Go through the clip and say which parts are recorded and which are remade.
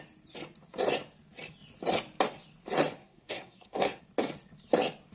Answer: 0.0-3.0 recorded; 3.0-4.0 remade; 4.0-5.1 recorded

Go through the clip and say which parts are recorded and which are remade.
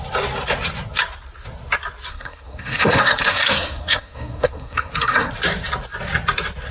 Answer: 0.0-2.1 recorded; 2.1-5.3 remade; 5.3-6.7 recorded